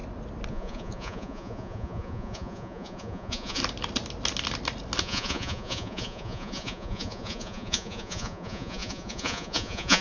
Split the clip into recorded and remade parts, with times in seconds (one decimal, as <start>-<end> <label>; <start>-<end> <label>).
0.0-0.5 recorded; 0.5-3.6 remade; 3.6-5.0 recorded; 5.0-10.0 remade